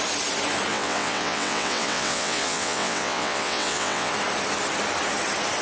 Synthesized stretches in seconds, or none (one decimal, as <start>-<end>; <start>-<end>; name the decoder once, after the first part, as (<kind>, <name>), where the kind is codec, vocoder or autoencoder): 0.7-4.1 (vocoder, WaveNeXt)